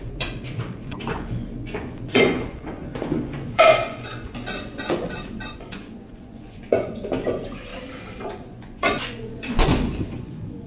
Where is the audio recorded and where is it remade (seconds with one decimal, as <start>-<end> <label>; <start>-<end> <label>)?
0.0-7.7 remade; 7.7-8.2 recorded; 8.2-10.7 remade